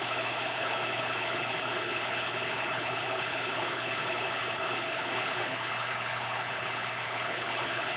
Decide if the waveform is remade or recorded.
remade